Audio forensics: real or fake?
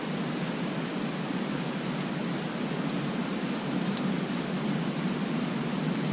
real